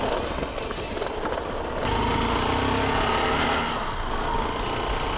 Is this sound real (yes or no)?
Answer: yes